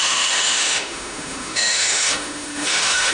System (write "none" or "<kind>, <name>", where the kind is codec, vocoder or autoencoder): autoencoder, DAC-VAE